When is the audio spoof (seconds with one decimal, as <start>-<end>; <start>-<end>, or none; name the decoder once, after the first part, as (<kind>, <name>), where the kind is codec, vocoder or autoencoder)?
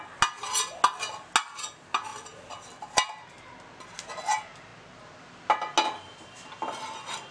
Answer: none